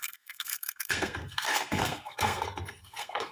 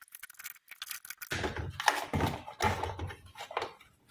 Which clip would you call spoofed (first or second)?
first